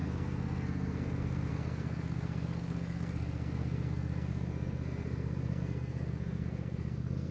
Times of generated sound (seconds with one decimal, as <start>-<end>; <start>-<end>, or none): 0.0-7.3